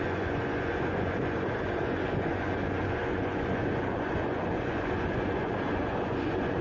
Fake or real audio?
fake